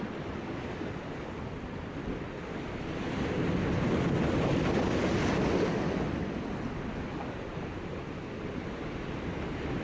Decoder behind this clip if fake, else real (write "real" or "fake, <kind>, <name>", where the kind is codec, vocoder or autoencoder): real